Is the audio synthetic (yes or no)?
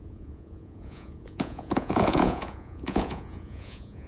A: yes